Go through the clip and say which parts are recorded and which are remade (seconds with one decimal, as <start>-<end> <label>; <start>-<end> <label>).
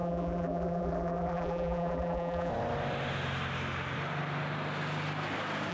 0.0-2.5 remade; 2.5-5.7 recorded